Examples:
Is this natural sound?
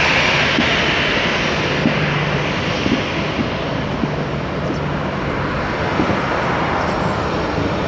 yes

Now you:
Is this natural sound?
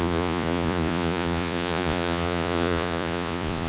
no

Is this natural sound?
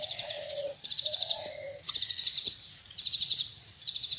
no